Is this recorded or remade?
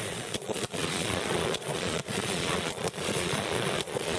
remade